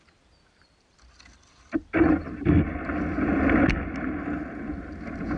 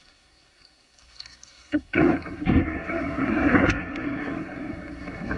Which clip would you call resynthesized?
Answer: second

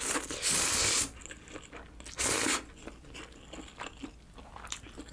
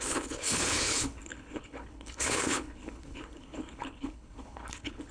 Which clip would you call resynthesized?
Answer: second